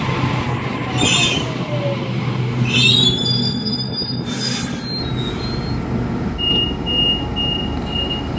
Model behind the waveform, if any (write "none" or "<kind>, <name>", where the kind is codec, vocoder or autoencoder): none